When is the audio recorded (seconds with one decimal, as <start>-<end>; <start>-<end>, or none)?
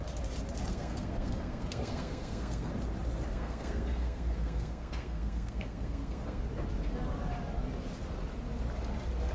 0.0-0.7; 2.7-3.3; 6.4-9.3